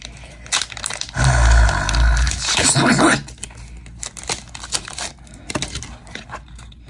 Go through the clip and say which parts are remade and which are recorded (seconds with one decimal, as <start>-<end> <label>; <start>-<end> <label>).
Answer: 0.0-6.9 recorded